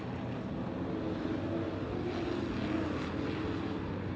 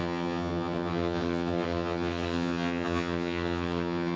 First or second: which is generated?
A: second